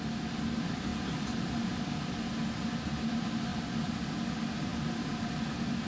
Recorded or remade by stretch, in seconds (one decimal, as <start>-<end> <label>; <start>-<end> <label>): 0.0-0.9 recorded; 0.9-1.8 remade; 1.8-3.5 recorded; 3.5-4.1 remade; 4.1-5.9 recorded